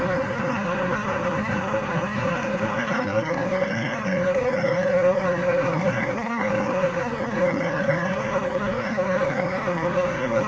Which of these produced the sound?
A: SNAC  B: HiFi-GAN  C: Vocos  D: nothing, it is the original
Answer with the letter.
A